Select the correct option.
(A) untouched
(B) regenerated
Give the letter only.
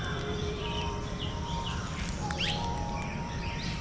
B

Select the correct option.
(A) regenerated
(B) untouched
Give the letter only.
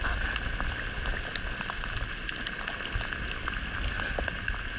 B